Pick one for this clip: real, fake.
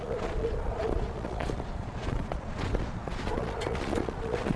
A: fake